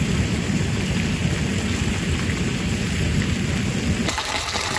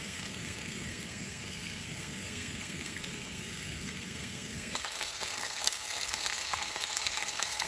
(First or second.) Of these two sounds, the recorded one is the first